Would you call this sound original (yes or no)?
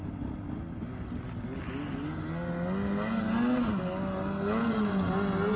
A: yes